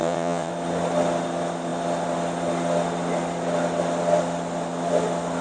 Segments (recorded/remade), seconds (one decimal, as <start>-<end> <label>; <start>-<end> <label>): 0.0-0.5 remade; 0.5-5.4 recorded